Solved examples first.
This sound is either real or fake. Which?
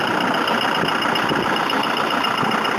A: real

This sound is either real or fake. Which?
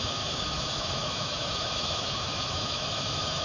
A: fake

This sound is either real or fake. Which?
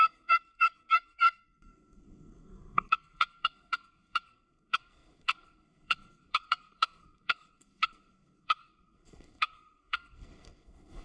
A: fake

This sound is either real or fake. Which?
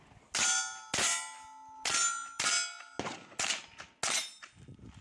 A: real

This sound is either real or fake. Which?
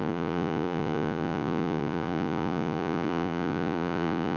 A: fake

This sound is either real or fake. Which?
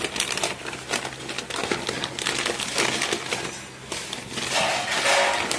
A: real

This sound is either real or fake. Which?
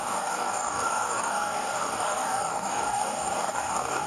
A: fake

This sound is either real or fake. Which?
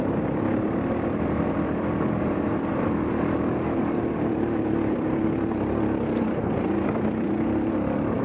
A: fake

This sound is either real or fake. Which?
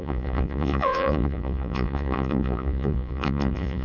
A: fake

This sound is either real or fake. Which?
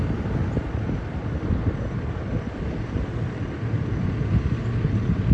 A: real